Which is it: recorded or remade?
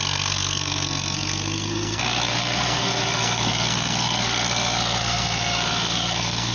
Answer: remade